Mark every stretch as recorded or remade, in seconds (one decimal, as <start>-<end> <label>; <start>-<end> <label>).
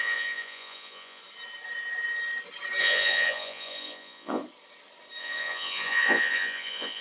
0.0-1.2 remade; 1.2-2.8 recorded; 2.8-4.4 remade; 4.4-5.2 recorded; 5.2-7.0 remade